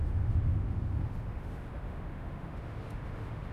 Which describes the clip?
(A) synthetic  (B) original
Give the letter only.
A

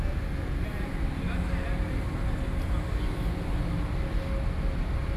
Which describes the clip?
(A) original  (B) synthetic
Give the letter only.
A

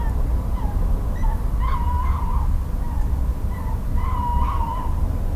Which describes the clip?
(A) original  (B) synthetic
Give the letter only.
A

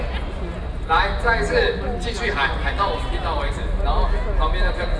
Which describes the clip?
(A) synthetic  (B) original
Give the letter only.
B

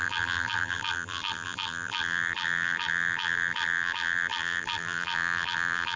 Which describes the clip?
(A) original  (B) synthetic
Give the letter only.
B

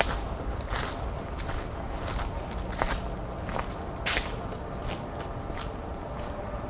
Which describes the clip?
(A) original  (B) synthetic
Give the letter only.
A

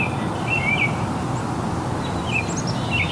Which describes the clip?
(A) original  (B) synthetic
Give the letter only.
A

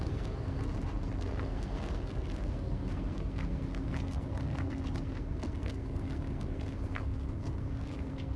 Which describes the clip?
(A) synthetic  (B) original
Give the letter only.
A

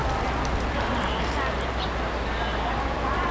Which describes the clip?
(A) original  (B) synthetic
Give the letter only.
A